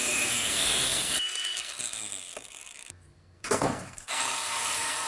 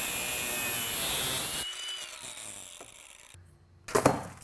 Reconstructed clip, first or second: first